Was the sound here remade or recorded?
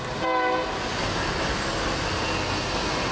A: recorded